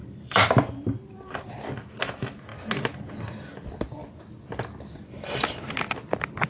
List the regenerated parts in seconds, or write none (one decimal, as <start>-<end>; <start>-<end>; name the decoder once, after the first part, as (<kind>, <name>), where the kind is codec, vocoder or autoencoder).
0.0-1.5 (vocoder, BigVGAN v2)